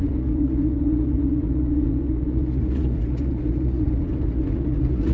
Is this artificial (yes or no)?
yes